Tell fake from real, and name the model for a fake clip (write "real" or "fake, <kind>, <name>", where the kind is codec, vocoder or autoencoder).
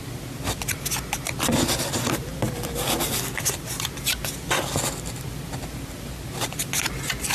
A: real